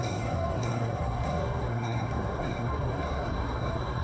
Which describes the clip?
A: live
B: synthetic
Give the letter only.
B